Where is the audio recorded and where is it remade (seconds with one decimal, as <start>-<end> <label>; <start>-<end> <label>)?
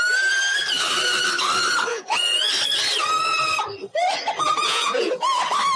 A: 0.0-1.9 recorded; 1.9-2.5 remade; 2.5-4.4 recorded; 4.4-5.1 remade; 5.1-5.8 recorded